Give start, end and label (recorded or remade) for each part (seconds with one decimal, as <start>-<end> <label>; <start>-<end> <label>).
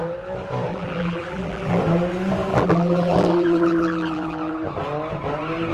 0.0-0.7 recorded; 0.7-1.8 remade; 1.8-2.5 recorded; 2.5-4.5 remade; 4.5-5.7 recorded